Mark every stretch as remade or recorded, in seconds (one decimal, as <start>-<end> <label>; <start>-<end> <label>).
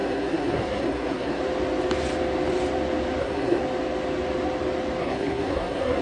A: 0.0-1.4 remade; 1.4-3.2 recorded; 3.2-3.6 remade; 3.6-5.0 recorded; 5.0-6.0 remade